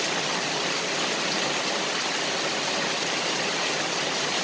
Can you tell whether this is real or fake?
real